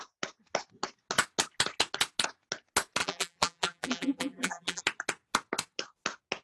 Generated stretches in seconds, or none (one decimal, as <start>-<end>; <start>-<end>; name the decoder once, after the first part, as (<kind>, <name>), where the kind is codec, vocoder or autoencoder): 3.0-4.8 (vocoder, BigVGAN v2)